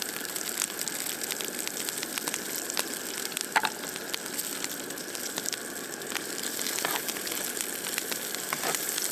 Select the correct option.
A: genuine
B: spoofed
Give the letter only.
A